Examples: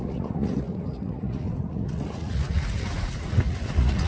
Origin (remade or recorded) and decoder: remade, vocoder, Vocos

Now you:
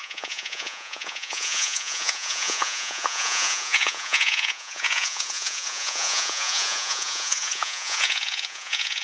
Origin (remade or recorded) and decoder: remade, vocoder, Vocos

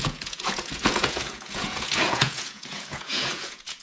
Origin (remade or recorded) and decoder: remade, vocoder, Vocos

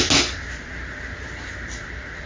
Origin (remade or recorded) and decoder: recorded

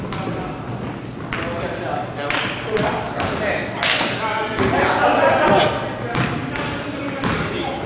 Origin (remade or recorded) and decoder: recorded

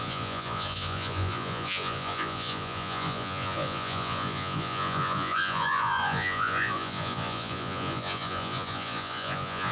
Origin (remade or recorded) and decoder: remade, vocoder, Vocos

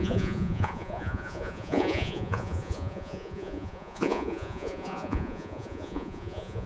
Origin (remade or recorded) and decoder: remade, vocoder, Vocos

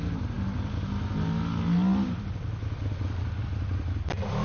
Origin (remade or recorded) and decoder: recorded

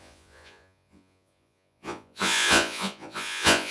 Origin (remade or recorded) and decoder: remade, vocoder, Vocos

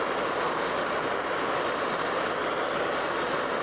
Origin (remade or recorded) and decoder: recorded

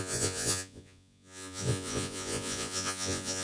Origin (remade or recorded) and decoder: remade, vocoder, Vocos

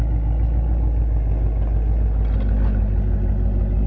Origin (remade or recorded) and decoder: recorded